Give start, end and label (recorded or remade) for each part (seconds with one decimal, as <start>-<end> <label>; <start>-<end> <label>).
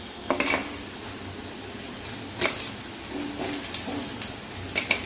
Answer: 0.0-5.1 recorded